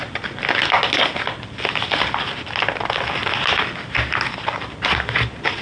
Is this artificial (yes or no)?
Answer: no